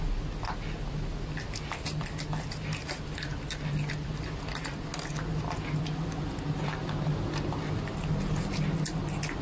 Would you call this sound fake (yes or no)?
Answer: no